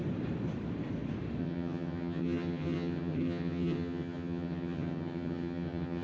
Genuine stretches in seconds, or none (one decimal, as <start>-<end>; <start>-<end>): 0.0-1.4